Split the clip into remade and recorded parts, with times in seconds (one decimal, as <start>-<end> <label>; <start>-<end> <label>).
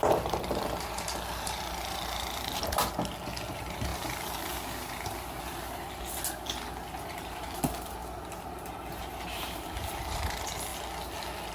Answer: 0.0-2.6 remade; 2.6-3.5 recorded; 3.5-3.9 remade; 3.9-7.1 recorded; 7.1-8.0 remade; 8.0-9.0 recorded; 9.0-10.7 remade; 10.7-11.5 recorded